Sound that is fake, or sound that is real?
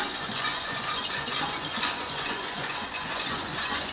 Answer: fake